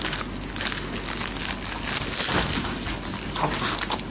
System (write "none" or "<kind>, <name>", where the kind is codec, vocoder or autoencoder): none